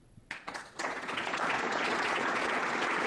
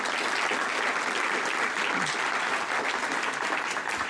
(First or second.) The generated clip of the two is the first